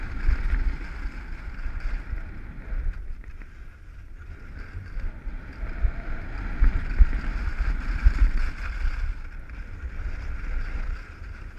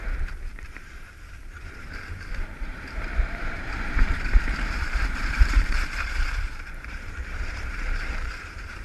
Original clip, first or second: first